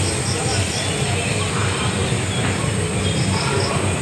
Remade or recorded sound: recorded